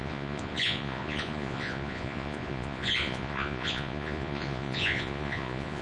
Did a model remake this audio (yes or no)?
yes